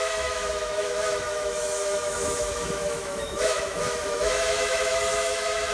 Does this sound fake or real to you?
fake